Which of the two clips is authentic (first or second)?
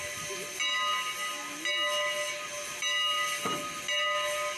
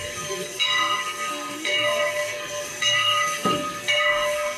first